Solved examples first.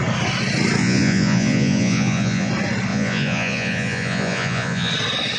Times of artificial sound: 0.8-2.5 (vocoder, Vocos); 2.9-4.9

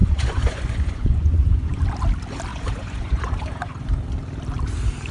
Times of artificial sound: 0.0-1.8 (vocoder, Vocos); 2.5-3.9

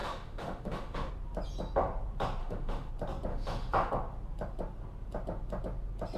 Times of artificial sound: 0.0-1.1 (autoencoder, DAC-VAE); 2.4-2.9; 3.3-3.9

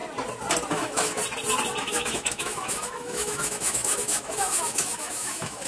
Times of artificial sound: 0.7-1.2 (autoencoder, DAC-VAE); 1.8-5.7